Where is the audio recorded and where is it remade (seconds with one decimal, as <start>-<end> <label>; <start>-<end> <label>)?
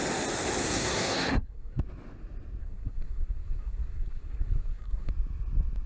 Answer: 0.0-0.6 recorded; 0.6-1.8 remade; 1.8-2.6 recorded; 2.6-5.1 remade; 5.1-5.9 recorded